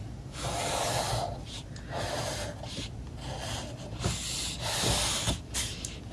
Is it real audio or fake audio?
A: real